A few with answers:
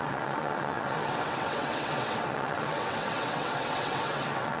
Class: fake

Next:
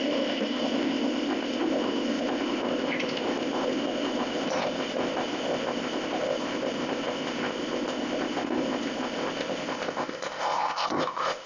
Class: fake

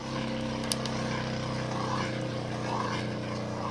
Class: real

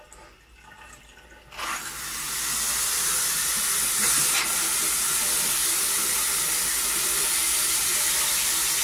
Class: real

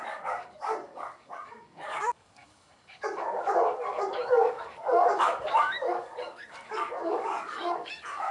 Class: fake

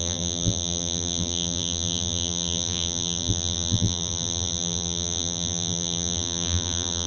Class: fake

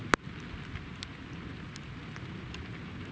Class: real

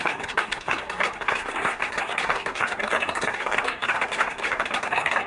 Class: fake